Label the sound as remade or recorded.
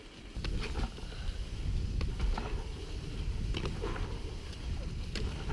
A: recorded